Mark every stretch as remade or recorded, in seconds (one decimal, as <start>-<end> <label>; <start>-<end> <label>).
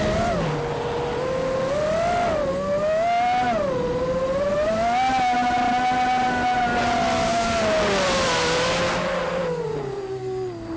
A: 0.0-10.8 recorded